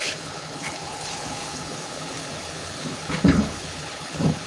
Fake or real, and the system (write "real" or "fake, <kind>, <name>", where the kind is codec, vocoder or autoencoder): fake, codec, HILCodec